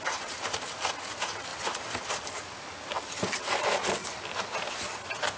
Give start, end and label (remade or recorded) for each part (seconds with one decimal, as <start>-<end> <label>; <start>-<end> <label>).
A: 0.0-5.4 recorded